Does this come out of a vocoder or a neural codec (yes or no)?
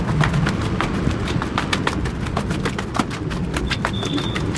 no